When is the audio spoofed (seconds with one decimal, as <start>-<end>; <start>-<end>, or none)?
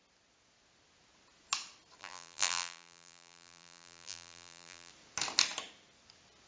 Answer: 2.0-4.9